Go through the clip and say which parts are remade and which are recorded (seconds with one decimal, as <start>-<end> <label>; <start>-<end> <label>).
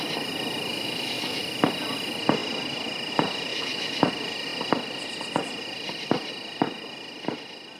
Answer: 0.0-0.7 recorded; 0.7-1.4 remade; 1.4-3.5 recorded; 3.5-4.1 remade; 4.1-7.8 recorded